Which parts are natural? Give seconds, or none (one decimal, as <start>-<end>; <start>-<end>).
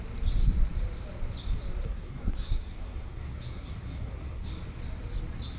0.0-1.8; 4.5-5.6